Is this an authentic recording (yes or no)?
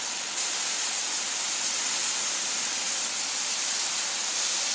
yes